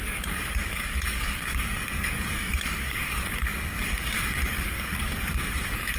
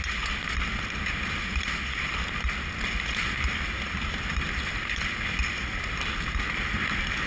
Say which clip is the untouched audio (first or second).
second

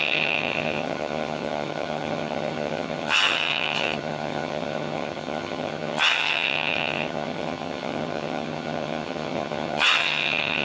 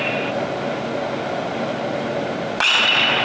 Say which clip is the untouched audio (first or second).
second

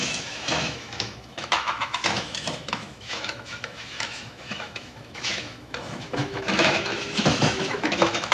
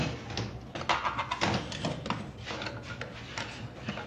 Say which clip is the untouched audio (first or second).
second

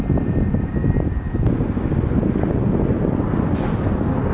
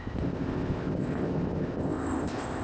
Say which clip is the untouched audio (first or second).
first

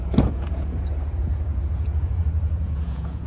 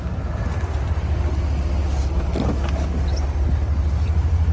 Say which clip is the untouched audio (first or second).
second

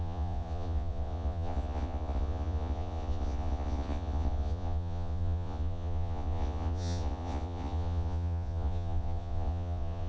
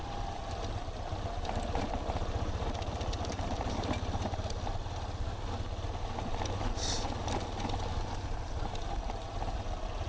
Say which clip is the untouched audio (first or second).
second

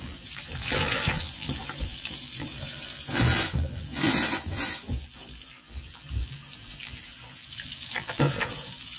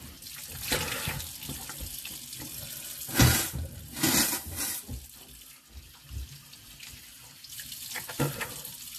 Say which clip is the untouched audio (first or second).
second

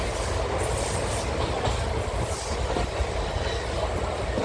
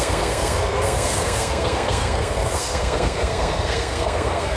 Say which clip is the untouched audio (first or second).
first